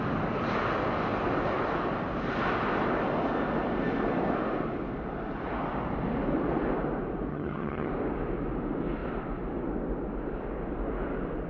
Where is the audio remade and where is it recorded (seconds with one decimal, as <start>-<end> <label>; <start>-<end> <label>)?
0.0-7.3 recorded; 7.3-7.9 remade; 7.9-11.5 recorded